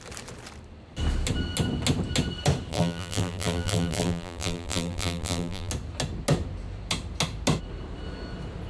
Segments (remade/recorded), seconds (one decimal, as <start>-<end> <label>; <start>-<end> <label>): 0.0-2.7 recorded; 2.7-5.7 remade; 5.7-8.7 recorded